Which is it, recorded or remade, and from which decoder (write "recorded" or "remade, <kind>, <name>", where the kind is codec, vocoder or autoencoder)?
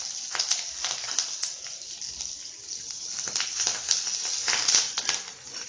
recorded